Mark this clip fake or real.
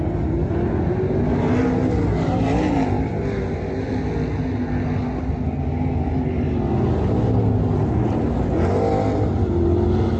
real